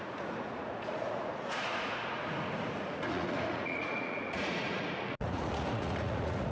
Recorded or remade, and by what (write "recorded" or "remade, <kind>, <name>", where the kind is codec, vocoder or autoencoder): remade, vocoder, Vocos